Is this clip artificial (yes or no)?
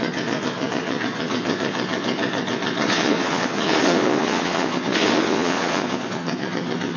yes